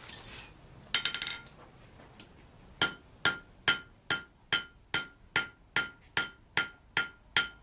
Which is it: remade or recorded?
recorded